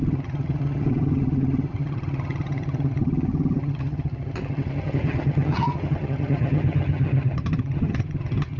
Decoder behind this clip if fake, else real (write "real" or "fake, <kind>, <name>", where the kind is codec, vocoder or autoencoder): fake, vocoder, HiFi-GAN